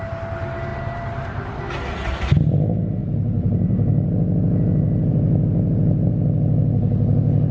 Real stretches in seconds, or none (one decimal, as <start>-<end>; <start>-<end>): 0.0-0.7; 1.6-3.0; 6.1-7.5